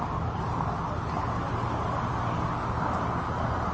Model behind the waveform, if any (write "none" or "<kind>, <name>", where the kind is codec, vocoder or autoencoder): none